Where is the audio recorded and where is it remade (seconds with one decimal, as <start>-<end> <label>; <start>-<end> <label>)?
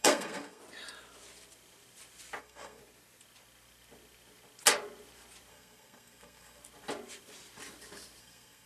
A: 0.0-0.6 remade; 0.6-2.4 recorded; 2.4-2.8 remade; 2.8-5.5 recorded; 5.5-6.6 remade; 6.6-8.2 recorded; 8.2-8.7 remade